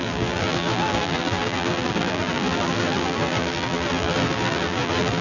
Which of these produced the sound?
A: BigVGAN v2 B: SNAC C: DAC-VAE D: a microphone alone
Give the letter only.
A